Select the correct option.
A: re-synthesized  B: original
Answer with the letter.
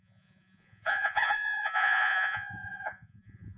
A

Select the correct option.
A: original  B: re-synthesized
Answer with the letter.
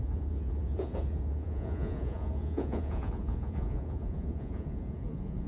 B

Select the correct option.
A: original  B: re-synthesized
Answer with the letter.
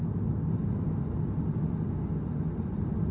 A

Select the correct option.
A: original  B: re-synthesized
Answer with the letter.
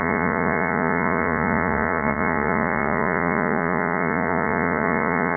B